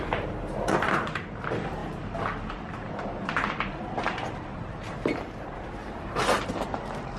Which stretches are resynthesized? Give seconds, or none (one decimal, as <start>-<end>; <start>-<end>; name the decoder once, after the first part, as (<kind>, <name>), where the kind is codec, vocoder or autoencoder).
0.0-1.8 (vocoder, BigVGAN v2); 2.5-5.8